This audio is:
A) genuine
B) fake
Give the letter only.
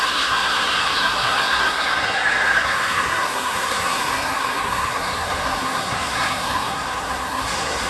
B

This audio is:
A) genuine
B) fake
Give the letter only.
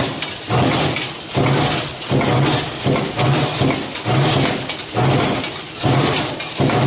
A